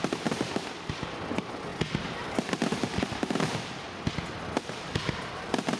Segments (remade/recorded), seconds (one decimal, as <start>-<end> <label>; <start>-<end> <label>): 0.0-5.8 recorded